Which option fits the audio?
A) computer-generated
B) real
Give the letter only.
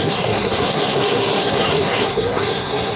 A